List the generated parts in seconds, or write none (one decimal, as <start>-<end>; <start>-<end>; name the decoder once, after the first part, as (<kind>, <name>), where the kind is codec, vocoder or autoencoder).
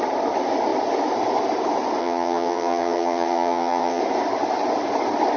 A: 2.0-4.0 (vocoder, HiFi-GAN)